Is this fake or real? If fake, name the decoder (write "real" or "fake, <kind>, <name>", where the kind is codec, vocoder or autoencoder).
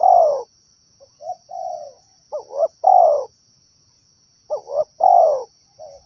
fake, vocoder, Vocos